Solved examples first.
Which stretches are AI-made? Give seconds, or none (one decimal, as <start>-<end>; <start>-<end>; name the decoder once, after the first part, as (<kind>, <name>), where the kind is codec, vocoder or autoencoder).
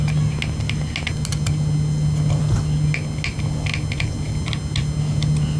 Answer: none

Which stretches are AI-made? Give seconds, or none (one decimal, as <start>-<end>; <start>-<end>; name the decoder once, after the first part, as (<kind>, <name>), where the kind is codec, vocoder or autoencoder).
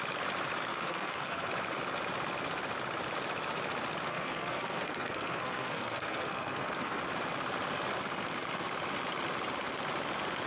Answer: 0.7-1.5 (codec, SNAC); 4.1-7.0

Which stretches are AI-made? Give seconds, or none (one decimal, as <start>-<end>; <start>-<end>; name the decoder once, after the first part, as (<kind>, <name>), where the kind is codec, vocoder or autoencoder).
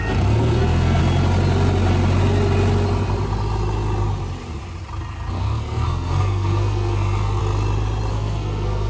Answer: 0.0-1.0 (codec, SNAC); 5.3-7.4; 8.1-8.9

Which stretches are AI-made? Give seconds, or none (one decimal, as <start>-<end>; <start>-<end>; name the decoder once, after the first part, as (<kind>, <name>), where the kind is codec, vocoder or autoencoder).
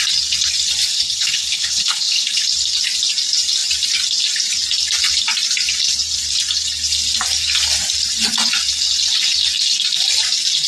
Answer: 0.9-2.4 (codec, HILCodec)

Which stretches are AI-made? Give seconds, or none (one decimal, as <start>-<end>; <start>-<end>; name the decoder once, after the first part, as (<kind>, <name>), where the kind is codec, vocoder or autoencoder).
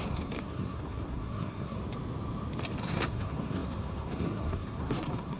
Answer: 0.0-1.8 (codec, SNAC); 2.8-5.4